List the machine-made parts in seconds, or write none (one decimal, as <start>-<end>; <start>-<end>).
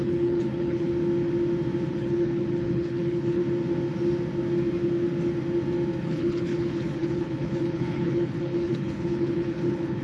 0.0-0.9; 1.9-3.4; 6.0-10.0